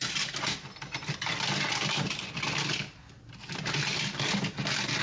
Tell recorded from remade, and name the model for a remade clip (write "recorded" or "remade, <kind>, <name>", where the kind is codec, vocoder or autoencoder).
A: recorded